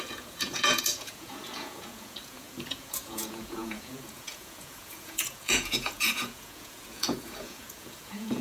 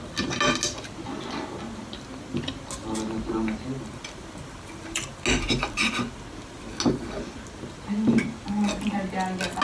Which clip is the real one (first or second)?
second